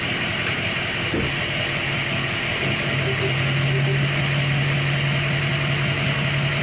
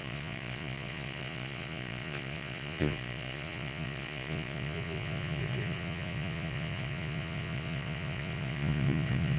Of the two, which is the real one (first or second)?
first